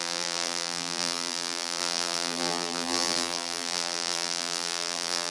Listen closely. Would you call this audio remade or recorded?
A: remade